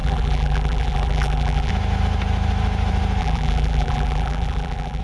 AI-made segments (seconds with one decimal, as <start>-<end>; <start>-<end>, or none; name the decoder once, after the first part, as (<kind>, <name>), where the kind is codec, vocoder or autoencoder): 0.0-1.7 (vocoder, BigVGAN v2); 3.2-5.0